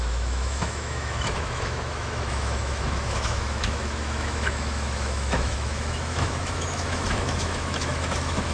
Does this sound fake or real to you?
fake